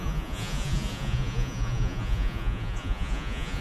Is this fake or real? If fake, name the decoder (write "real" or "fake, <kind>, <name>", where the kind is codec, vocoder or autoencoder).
fake, vocoder, Vocos